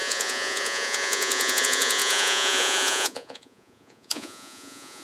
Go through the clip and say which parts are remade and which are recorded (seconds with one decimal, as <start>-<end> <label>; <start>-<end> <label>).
0.0-5.0 remade